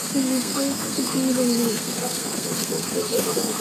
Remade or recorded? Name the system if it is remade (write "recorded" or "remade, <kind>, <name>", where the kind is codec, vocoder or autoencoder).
remade, codec, SNAC